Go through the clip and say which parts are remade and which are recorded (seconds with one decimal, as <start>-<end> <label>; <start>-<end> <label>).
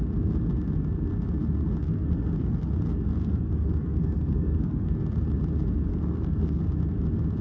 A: 0.0-1.8 recorded; 1.8-2.7 remade; 2.7-3.2 recorded; 3.2-4.9 remade; 4.9-5.9 recorded; 5.9-6.6 remade; 6.6-7.4 recorded